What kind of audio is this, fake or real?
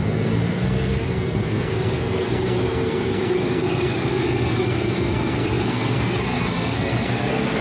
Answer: fake